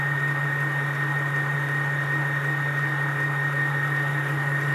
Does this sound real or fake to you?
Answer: real